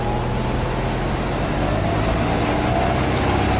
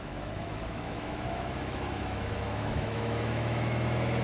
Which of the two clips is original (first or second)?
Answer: first